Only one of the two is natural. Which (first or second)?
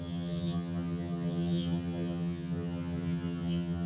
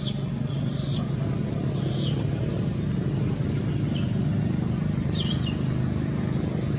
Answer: second